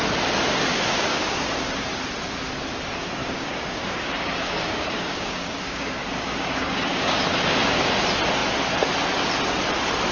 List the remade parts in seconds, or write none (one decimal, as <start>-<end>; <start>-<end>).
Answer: 0.7-1.7; 3.2-7.2